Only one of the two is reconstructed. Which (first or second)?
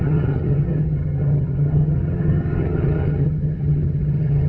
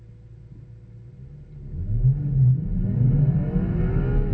first